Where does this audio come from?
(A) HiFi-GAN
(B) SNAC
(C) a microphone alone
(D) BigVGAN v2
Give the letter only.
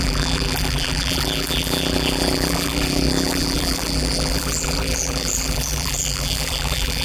D